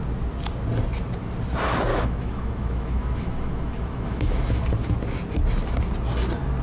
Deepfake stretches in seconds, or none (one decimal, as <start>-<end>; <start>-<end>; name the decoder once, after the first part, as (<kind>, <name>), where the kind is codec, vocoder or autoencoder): 1.9-4.6 (autoencoder, DAC-VAE)

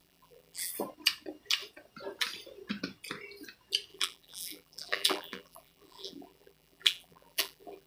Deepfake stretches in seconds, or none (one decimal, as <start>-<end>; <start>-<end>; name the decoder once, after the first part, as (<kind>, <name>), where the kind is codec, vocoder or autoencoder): 0.0-0.7 (vocoder, BigVGAN v2); 3.9-7.9

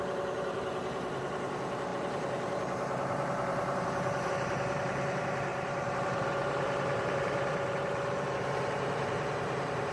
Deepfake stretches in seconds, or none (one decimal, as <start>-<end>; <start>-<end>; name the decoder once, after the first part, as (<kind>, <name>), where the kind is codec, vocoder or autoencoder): 0.0-9.9 (vocoder, BigVGAN v2)

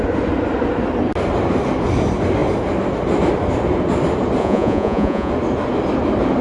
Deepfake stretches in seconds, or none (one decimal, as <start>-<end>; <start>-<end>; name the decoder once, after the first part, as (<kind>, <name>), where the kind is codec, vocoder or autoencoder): 4.4-5.3 (vocoder, Vocos)

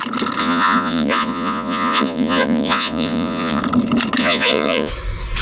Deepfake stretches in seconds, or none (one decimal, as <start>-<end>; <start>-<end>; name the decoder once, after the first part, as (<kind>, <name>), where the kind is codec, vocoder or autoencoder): 0.4-3.6 (vocoder, Vocos); 4.2-4.9

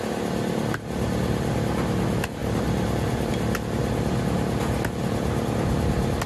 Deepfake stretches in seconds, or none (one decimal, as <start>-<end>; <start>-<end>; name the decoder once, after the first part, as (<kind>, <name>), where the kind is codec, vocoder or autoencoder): 2.4-3.3 (vocoder, BigVGAN v2)